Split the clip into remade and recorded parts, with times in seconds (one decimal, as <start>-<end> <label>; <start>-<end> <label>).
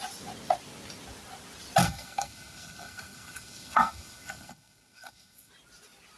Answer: 0.0-1.8 recorded; 1.8-5.5 remade; 5.5-6.2 recorded